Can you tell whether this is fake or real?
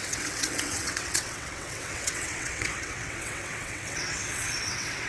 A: fake